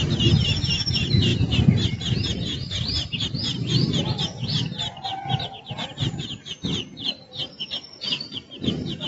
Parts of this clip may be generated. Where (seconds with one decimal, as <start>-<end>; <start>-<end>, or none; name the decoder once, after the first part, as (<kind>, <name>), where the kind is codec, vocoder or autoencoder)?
1.3-6.2 (vocoder, BigVGAN v2)